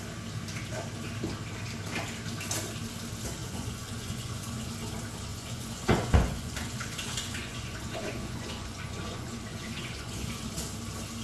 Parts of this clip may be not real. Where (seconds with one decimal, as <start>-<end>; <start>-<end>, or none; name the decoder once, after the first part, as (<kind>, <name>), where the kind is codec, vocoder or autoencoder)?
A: 3.4-4.7 (vocoder, Vocos); 5.3-10.5